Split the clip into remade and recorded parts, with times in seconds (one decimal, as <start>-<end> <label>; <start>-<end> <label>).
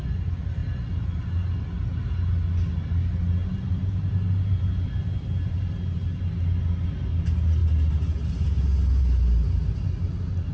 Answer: 0.0-10.5 recorded